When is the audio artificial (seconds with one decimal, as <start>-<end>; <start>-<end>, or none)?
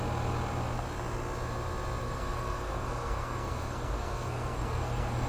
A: 2.0-5.3